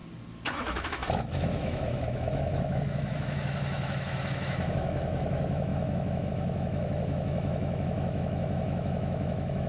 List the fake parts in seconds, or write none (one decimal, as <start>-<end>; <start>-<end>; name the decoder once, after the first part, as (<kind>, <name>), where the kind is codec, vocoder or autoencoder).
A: 0.6-9.7 (autoencoder, DAC-VAE)